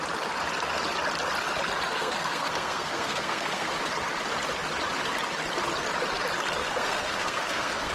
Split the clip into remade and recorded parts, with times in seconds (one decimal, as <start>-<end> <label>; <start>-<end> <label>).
0.0-1.9 recorded; 1.9-3.7 remade; 3.7-6.6 recorded; 6.6-7.9 remade